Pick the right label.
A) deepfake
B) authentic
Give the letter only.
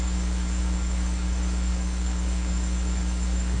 A